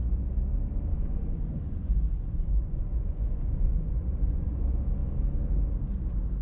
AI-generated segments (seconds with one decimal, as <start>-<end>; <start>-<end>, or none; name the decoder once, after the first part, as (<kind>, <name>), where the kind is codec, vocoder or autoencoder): 0.9-4.6 (vocoder, Vocos)